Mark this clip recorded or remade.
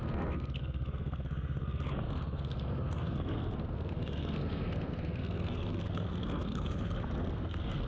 remade